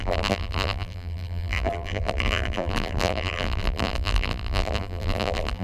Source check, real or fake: fake